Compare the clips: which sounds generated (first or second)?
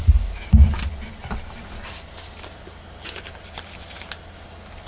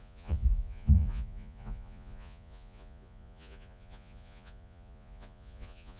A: second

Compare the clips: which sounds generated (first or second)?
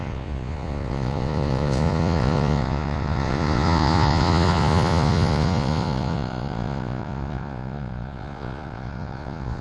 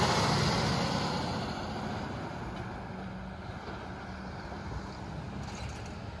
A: first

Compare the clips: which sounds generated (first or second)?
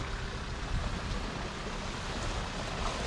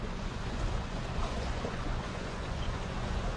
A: second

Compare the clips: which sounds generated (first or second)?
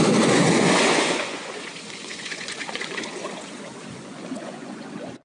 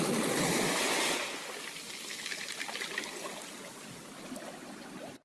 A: first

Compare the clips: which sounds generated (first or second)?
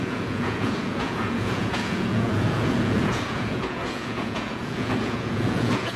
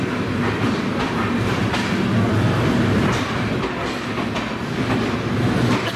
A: first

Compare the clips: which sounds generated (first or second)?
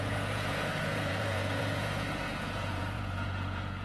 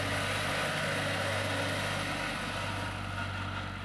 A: first